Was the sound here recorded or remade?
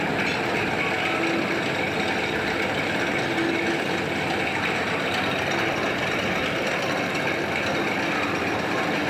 recorded